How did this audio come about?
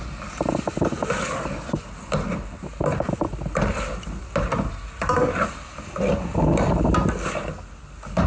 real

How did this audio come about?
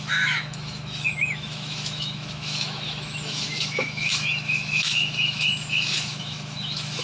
fake